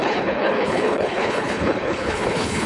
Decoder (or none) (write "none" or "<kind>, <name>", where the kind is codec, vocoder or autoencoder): codec, HILCodec